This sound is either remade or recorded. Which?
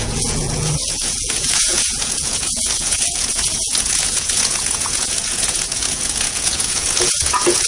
remade